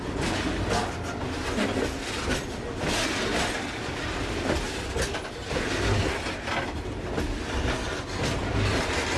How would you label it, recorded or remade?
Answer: recorded